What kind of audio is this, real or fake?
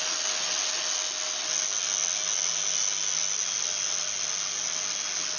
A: real